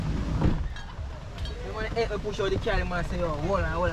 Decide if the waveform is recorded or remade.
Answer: recorded